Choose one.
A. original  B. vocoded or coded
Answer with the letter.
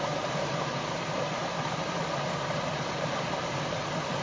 B